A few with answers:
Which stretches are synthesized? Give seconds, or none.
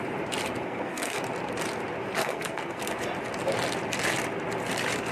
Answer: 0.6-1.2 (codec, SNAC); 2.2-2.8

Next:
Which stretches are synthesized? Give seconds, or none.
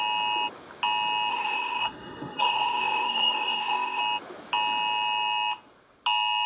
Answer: 1.3-4.0 (codec, SNAC)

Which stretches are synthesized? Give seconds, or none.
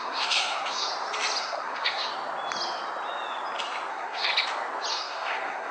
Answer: 0.0-0.9 (codec, SNAC); 1.4-2.1; 3.9-4.3; 4.9-5.7